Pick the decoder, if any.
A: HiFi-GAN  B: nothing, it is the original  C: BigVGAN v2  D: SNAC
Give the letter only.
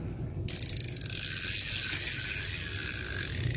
B